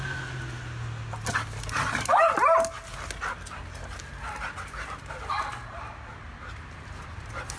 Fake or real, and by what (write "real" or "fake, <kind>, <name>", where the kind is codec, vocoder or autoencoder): real